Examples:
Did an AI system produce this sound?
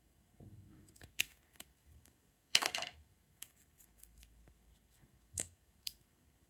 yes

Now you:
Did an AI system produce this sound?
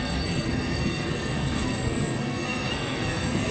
yes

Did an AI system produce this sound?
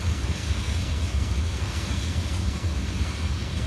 yes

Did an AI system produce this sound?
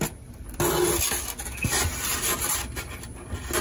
no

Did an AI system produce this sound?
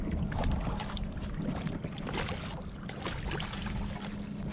no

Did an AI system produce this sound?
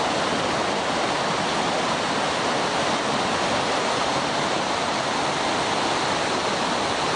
no